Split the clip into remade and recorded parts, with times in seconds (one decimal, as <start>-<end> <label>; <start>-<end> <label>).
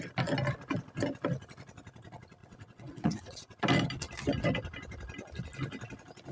0.0-2.4 recorded; 2.4-3.6 remade; 3.6-6.3 recorded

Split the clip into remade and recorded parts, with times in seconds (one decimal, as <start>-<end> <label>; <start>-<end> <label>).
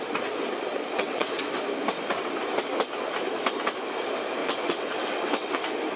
0.0-0.7 recorded; 0.7-1.3 remade; 1.3-4.4 recorded; 4.4-5.6 remade; 5.6-6.0 recorded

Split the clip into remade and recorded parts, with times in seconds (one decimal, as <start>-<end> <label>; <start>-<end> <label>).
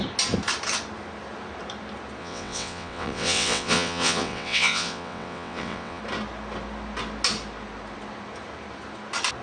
0.0-2.2 recorded; 2.2-6.0 remade; 6.0-9.4 recorded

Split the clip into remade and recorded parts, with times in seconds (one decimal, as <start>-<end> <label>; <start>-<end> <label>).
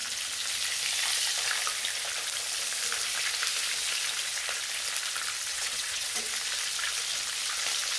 0.0-5.5 recorded; 5.5-6.3 remade; 6.3-8.0 recorded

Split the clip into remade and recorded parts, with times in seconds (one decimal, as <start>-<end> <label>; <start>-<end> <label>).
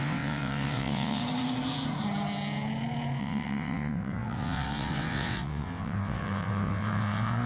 0.0-1.2 remade; 1.2-3.2 recorded; 3.2-7.5 remade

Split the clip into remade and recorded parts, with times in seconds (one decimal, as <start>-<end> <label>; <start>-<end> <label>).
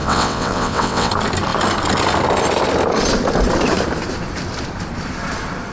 0.0-1.1 remade; 1.1-5.7 recorded